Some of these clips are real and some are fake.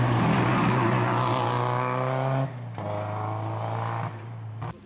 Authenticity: real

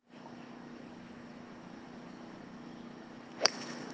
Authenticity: fake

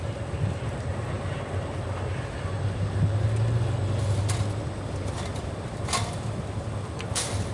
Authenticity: real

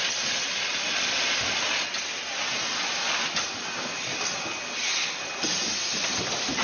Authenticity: real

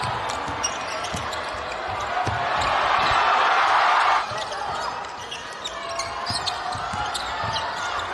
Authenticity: real